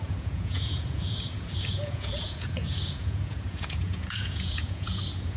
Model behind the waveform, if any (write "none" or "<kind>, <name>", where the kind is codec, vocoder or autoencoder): vocoder, Vocos